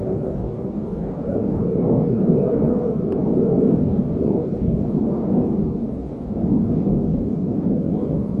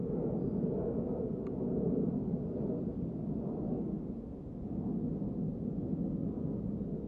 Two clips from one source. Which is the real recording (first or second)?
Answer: second